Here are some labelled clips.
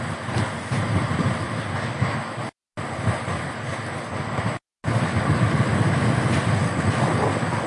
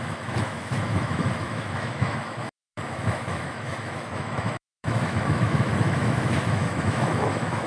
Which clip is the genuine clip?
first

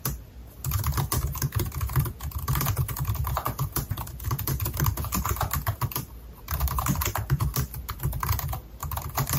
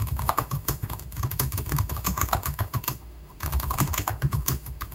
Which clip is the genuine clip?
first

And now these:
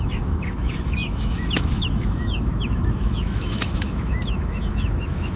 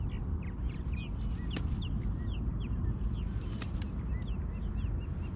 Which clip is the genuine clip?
second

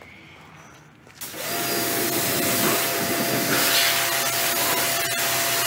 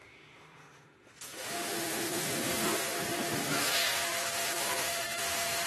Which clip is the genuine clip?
first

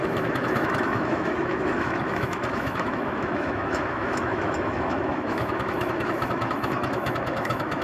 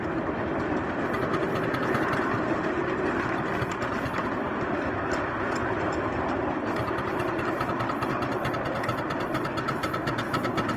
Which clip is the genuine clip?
second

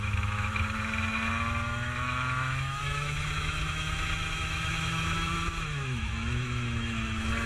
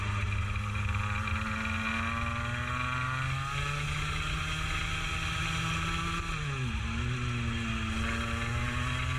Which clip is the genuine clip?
second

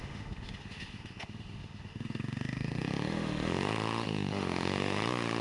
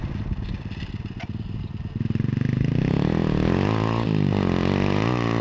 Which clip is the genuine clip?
second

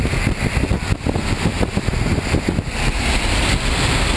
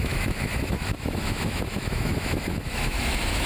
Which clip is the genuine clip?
first